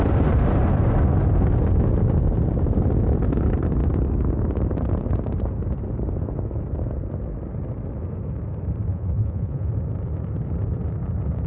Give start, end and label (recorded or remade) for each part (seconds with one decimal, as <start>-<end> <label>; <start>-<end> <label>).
0.0-8.9 recorded; 8.9-9.7 remade; 9.7-11.5 recorded